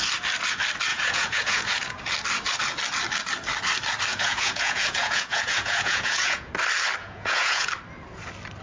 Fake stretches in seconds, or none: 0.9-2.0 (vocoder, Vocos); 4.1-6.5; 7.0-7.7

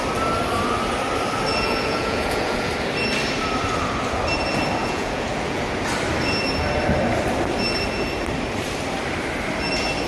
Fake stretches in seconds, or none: 1.5-2.7 (vocoder, Vocos); 4.8-5.6

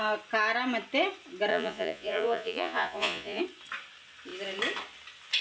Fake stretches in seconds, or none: 1.5-3.4 (vocoder, Vocos)

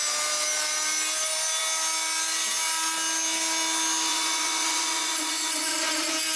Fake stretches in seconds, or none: 4.1-5.9 (vocoder, Vocos)

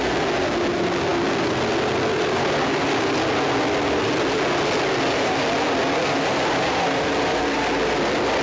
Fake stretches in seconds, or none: none

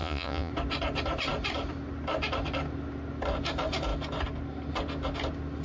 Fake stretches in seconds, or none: 0.0-0.5 (vocoder, Vocos)

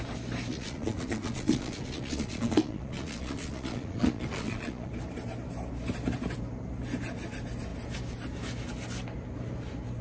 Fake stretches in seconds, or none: 0.5-4.9 (vocoder, Vocos)

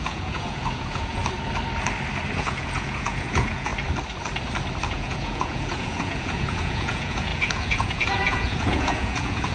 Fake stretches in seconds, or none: 0.0-1.2 (vocoder, Vocos); 2.3-3.7; 4.9-9.5